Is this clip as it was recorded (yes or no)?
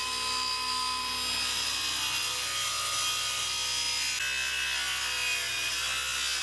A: yes